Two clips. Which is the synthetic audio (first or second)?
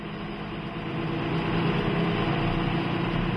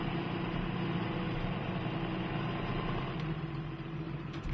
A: second